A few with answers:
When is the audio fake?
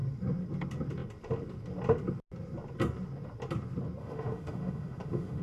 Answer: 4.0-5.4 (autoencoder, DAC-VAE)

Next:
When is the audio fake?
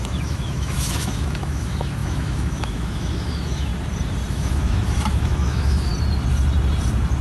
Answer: 0.0-3.7 (autoencoder, DAC-VAE); 4.3-5.9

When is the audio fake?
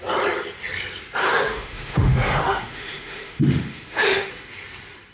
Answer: 1.2-4.3 (autoencoder, DAC-VAE)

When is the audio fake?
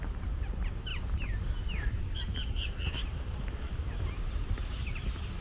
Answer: 0.9-4.1 (vocoder, BigVGAN v2)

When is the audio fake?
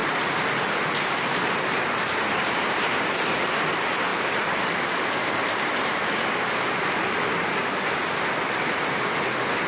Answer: 0.0-3.0 (vocoder, BigVGAN v2); 4.1-6.0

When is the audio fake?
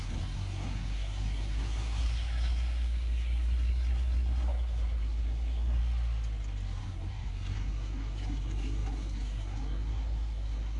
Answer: 0.0-5.8 (codec, SNAC); 6.8-10.8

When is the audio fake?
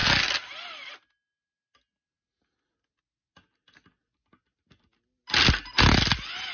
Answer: none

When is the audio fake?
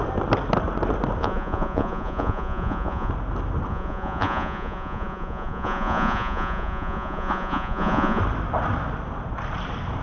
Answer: 1.2-3.1 (vocoder, Vocos); 3.7-8.2